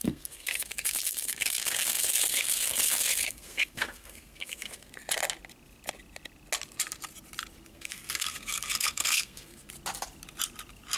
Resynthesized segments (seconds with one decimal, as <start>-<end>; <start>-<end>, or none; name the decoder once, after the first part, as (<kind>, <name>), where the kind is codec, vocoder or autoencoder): 0.0-4.9 (codec, SNAC); 7.7-9.7